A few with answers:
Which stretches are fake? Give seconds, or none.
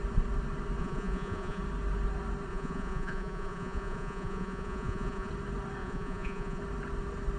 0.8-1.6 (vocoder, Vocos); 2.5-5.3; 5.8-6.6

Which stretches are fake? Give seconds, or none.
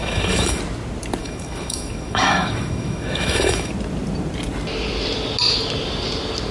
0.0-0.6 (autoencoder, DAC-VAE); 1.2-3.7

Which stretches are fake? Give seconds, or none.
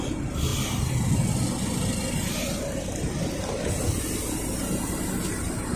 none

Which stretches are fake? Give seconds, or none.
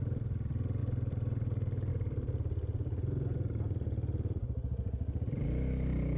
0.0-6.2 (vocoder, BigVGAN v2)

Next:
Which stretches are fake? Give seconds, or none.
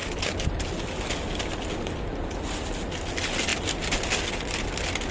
none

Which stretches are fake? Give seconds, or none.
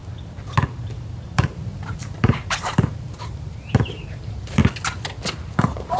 0.8-4.6 (vocoder, BigVGAN v2); 5.3-6.0